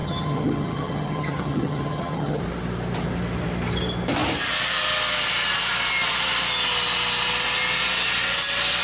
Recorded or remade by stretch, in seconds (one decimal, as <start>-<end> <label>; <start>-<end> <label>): 0.0-2.4 remade; 2.4-8.8 recorded